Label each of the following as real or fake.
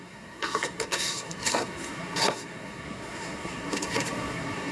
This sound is fake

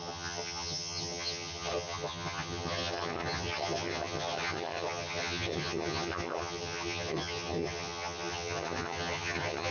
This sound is fake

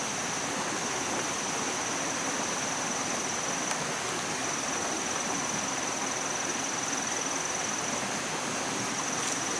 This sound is real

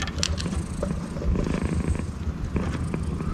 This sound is real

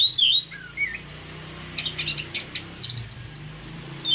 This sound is real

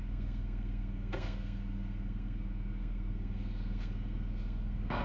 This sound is fake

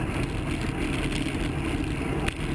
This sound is real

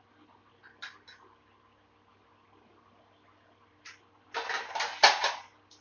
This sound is real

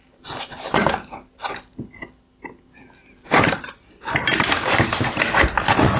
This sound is real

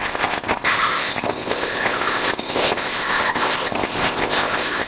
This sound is fake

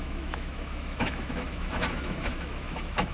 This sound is fake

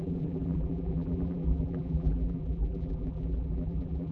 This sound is fake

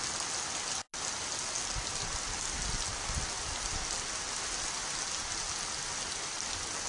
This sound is real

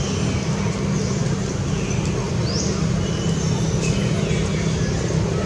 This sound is real